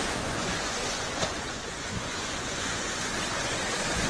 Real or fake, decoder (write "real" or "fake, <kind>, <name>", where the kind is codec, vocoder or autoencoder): fake, vocoder, Vocos